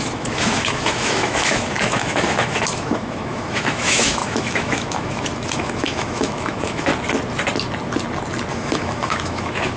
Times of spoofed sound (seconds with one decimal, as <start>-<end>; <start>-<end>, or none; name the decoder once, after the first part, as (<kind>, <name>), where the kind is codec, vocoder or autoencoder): 0.0-6.9 (autoencoder, DAC-VAE); 8.5-9.8